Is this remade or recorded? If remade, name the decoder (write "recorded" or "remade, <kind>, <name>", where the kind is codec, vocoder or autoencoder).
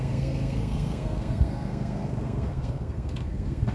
remade, codec, SNAC